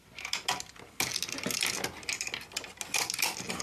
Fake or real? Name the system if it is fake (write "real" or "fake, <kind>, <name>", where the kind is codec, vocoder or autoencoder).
real